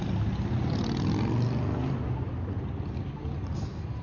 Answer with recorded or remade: recorded